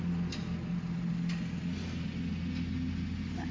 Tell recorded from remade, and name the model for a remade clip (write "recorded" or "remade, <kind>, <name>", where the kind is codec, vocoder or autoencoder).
recorded